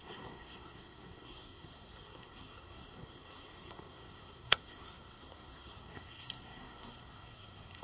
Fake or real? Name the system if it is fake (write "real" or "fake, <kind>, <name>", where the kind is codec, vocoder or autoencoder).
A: fake, codec, SNAC